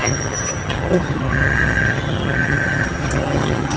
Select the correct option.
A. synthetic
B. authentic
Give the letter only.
A